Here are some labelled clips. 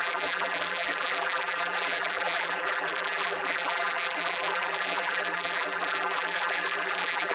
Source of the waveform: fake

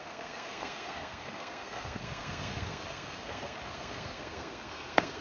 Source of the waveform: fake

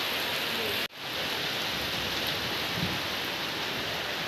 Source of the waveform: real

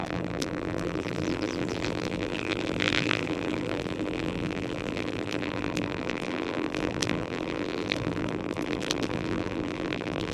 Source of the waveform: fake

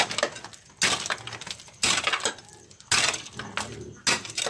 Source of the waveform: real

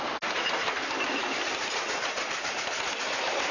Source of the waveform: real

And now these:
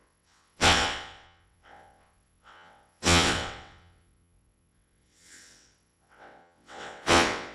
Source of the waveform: fake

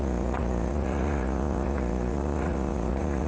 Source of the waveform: fake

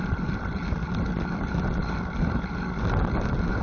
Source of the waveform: real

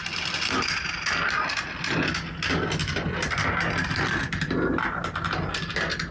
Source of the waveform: real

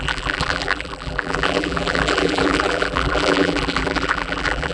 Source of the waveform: fake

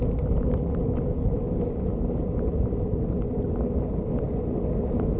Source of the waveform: real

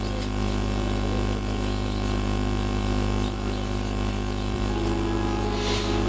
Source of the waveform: real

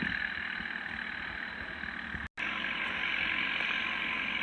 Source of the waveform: real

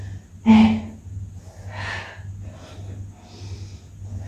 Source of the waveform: real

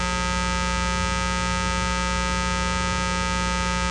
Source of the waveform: real